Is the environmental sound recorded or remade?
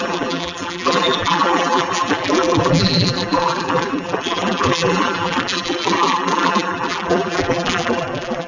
remade